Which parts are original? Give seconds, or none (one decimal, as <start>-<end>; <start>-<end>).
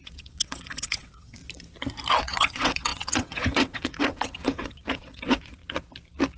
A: 1.4-2.2; 5.6-6.4